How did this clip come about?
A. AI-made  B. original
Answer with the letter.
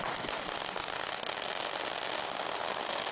B